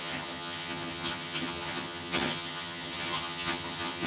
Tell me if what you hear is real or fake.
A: fake